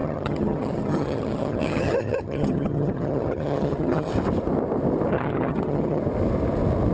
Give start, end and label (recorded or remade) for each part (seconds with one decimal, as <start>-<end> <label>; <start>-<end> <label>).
0.0-4.1 remade; 4.1-5.1 recorded; 5.1-6.0 remade; 6.0-6.9 recorded